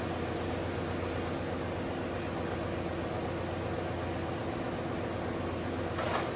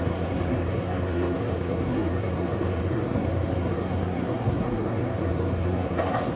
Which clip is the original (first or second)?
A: first